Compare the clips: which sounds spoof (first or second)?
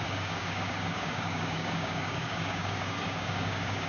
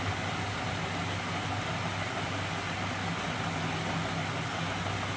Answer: first